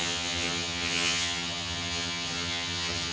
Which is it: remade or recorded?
remade